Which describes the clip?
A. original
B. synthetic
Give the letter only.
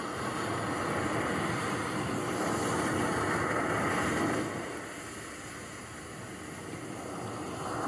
A